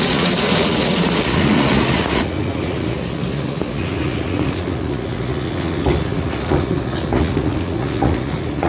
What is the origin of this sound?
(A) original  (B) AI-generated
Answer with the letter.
B